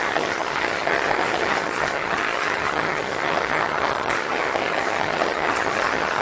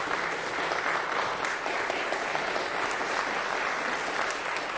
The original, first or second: second